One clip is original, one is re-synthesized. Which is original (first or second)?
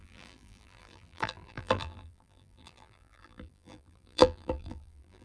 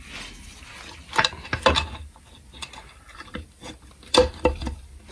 second